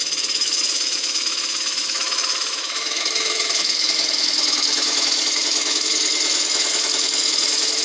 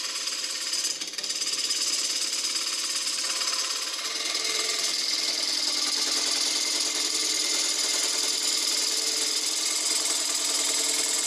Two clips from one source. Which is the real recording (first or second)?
second